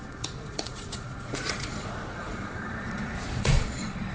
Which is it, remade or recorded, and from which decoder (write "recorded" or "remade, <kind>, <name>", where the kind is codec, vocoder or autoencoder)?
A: remade, vocoder, Vocos